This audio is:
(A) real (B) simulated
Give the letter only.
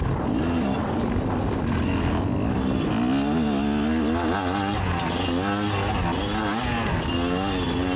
A